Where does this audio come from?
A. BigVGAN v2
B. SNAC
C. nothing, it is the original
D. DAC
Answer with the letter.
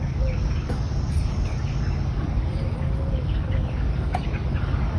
D